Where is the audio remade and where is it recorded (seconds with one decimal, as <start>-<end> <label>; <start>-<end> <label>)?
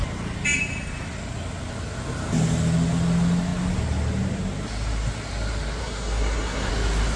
0.0-5.8 recorded; 5.8-6.7 remade; 6.7-7.2 recorded